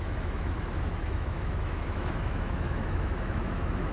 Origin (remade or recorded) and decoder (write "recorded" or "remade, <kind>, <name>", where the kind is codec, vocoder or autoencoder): remade, autoencoder, DAC-VAE